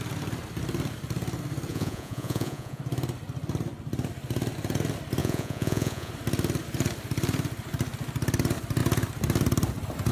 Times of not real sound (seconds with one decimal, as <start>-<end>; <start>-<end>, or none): 1.7-2.8; 5.2-6.1